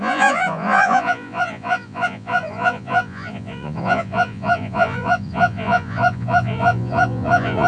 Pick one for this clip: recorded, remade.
remade